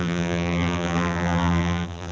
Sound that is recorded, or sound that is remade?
remade